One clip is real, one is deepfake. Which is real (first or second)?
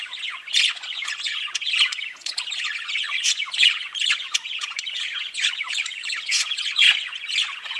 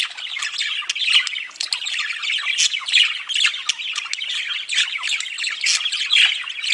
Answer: second